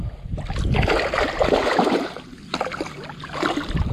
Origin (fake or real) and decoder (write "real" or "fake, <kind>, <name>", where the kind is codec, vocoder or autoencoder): real